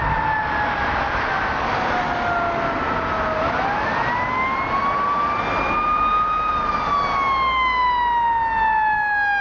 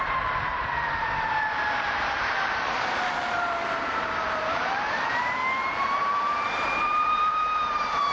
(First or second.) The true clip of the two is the first